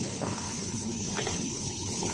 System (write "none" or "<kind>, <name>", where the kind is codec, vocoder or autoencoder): codec, HILCodec